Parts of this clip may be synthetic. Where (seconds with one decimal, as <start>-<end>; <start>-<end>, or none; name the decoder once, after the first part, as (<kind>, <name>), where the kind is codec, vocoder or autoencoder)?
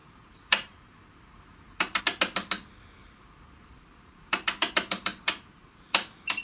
0.0-2.0 (vocoder, BigVGAN v2); 3.0-6.4